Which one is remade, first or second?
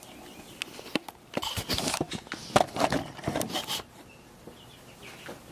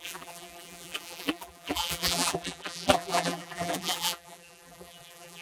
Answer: second